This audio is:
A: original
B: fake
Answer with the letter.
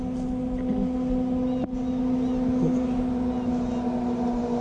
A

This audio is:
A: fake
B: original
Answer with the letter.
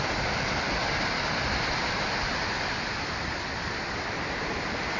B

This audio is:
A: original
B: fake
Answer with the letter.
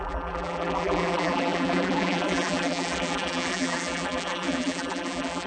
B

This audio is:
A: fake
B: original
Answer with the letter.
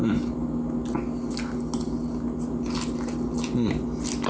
B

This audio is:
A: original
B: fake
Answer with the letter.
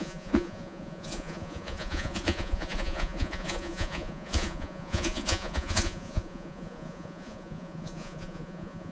B